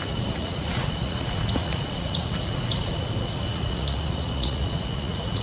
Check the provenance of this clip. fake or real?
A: fake